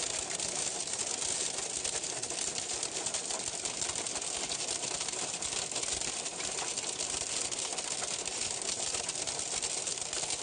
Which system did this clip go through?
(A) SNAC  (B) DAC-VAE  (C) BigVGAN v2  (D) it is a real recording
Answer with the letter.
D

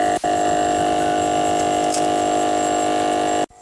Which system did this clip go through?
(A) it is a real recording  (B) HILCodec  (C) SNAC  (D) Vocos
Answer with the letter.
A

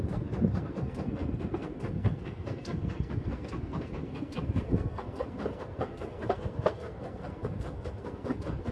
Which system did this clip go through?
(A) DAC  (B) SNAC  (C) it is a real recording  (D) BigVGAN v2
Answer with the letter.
B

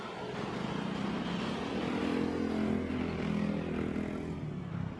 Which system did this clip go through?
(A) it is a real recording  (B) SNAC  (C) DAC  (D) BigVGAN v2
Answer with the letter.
A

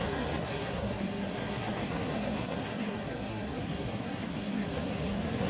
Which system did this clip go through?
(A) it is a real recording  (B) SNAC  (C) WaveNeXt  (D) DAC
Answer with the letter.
B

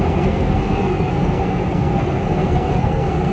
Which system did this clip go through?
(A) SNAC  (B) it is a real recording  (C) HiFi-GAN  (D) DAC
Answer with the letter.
A